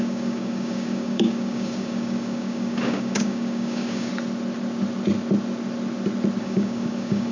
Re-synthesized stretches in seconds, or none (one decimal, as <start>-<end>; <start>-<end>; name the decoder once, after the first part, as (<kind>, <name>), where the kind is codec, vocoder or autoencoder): 0.0-4.1 (codec, DAC); 6.4-7.3